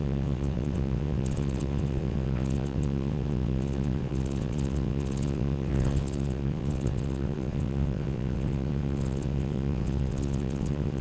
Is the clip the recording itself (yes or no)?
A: no